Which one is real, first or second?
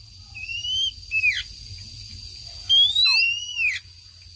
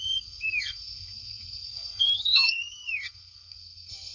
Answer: first